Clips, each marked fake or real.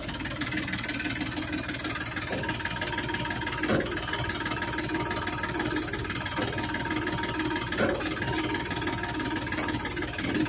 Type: real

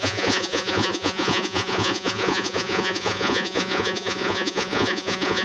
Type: fake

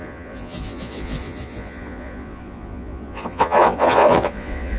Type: fake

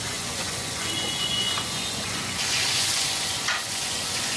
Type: fake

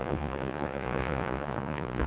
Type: fake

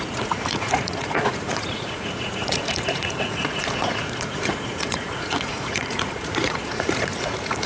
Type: fake